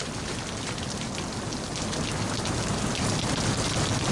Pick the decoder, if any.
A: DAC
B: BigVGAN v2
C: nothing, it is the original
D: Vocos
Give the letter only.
C